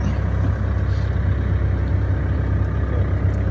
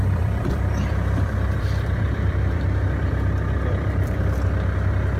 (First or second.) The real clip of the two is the first